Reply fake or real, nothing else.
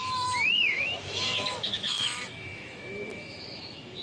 fake